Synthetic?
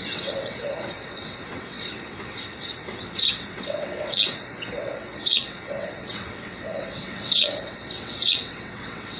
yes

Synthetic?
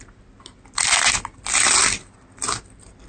no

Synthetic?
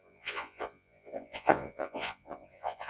yes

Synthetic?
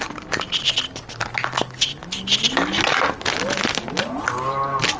no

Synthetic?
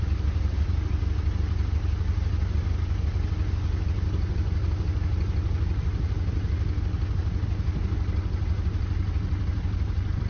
no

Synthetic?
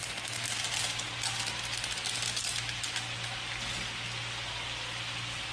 no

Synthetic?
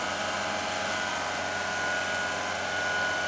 no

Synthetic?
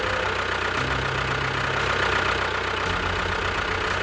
no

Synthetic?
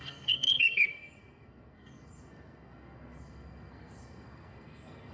yes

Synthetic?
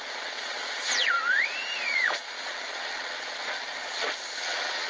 yes